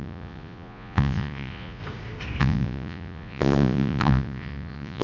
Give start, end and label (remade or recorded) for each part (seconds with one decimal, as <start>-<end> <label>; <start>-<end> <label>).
0.0-1.8 remade; 1.8-2.4 recorded; 2.4-5.0 remade